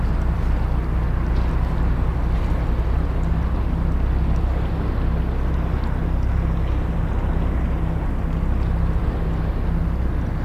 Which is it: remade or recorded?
recorded